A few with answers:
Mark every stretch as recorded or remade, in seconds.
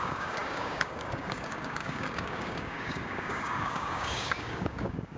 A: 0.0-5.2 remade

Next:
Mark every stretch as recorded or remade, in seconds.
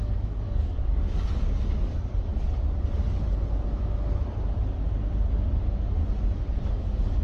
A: 0.0-2.3 remade; 2.3-5.3 recorded; 5.3-6.0 remade; 6.0-6.7 recorded; 6.7-7.2 remade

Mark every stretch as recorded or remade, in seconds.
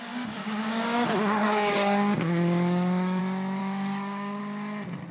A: 0.0-0.4 recorded; 0.4-3.2 remade; 3.2-3.6 recorded; 3.6-4.4 remade; 4.4-5.1 recorded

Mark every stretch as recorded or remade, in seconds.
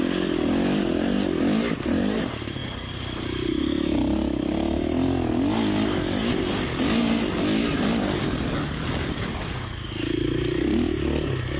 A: 0.0-11.6 recorded